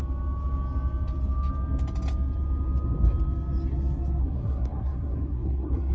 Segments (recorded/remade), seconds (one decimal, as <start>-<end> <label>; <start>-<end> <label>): 0.0-4.2 recorded; 4.2-5.9 remade